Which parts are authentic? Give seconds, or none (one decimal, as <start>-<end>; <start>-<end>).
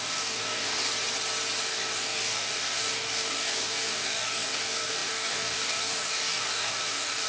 0.9-1.6